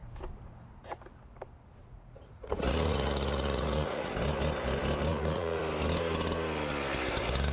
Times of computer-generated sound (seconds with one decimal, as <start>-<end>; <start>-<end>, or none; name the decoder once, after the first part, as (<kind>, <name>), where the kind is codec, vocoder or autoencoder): 1.8-4.1 (vocoder, Vocos); 5.1-5.6